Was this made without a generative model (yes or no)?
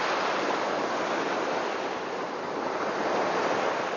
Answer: yes